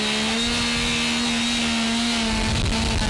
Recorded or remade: recorded